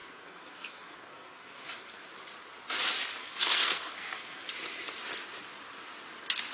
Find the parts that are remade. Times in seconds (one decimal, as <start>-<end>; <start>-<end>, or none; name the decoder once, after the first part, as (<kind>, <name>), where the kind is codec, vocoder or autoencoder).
0.0-2.1 (codec, SNAC); 3.2-4.5